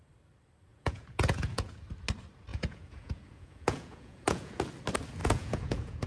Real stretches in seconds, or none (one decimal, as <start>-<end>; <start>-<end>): 0.0-0.7; 1.8-2.5; 4.6-5.2